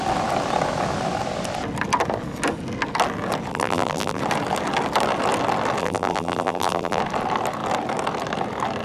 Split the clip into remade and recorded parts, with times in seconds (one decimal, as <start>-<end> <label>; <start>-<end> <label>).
0.0-3.5 recorded; 3.5-4.2 remade; 4.2-5.8 recorded; 5.8-7.0 remade; 7.0-8.8 recorded